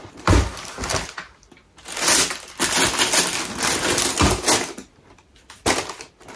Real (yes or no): yes